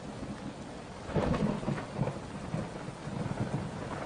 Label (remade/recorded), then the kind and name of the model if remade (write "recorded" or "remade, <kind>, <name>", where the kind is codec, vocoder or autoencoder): recorded